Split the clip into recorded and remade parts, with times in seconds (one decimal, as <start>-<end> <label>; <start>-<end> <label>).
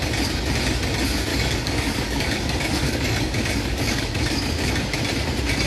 0.0-1.3 recorded; 1.3-4.7 remade; 4.7-5.7 recorded